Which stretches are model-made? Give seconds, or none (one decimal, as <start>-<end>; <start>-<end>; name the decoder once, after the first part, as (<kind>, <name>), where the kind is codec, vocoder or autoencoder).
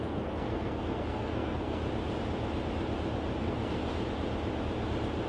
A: 0.0-1.8 (codec, SNAC); 3.4-3.8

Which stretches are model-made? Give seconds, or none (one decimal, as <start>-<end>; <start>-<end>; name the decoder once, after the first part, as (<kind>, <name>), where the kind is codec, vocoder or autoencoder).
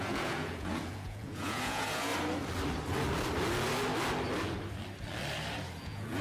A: 0.0-2.1 (vocoder, Vocos); 5.8-6.2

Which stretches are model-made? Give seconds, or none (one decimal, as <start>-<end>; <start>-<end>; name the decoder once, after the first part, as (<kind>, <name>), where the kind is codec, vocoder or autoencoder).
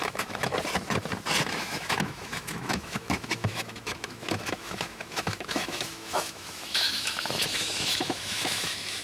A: 0.0-0.5 (autoencoder, DAC-VAE); 1.4-9.0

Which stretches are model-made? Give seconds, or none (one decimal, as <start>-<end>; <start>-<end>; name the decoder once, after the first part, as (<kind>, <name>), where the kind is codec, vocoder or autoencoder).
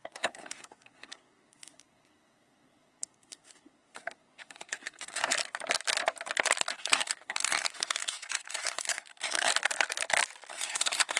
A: 0.0-5.2 (codec, SNAC); 6.7-9.5; 10.5-11.2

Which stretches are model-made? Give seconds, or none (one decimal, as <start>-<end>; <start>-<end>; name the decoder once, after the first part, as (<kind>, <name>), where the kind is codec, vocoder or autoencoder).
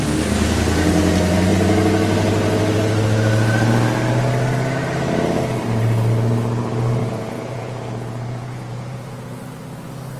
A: 7.0-9.4 (vocoder, Vocos)